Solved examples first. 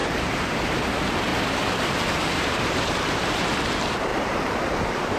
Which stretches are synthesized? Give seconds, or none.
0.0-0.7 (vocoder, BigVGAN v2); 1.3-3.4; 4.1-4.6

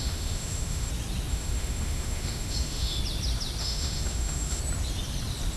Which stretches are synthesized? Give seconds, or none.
0.0-0.9 (autoencoder, DAC-VAE); 1.3-3.0; 3.6-4.6

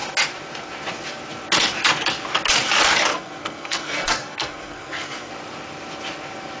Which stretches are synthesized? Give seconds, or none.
3.1-5.3 (codec, SNAC)

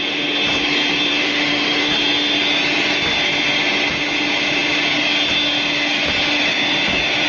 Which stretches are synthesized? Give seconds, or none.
1.1-1.9 (autoencoder, DAC-VAE)

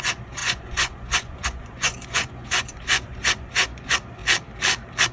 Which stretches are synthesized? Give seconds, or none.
0.0-4.2 (vocoder, Vocos)

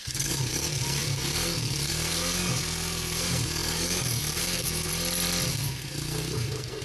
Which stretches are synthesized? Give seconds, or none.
0.0-4.9 (codec, SNAC); 5.5-6.8